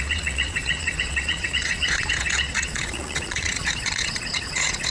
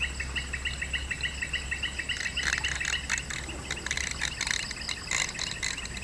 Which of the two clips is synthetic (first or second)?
first